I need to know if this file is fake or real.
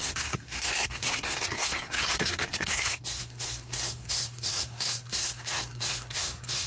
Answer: fake